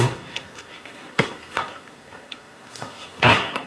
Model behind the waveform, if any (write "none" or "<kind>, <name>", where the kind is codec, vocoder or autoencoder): codec, SNAC